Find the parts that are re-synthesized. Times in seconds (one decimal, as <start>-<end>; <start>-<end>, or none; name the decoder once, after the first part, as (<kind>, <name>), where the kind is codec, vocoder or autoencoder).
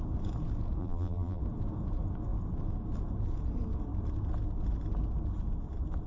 0.8-1.4 (vocoder, BigVGAN v2)